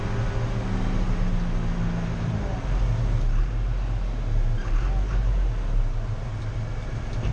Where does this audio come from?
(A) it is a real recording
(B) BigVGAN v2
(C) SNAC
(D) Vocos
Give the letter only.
A